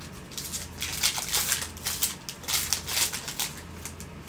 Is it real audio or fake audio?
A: real